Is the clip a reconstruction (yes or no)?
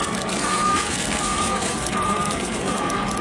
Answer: yes